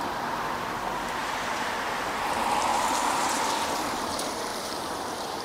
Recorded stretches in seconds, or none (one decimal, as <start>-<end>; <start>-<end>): 0.0-1.2; 2.2-2.7; 3.2-4.5